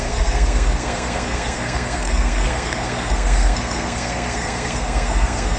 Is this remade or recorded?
remade